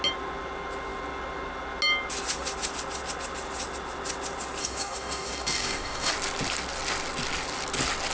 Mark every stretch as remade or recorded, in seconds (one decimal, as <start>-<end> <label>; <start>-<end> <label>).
0.0-4.6 recorded; 4.6-6.1 remade; 6.1-8.1 recorded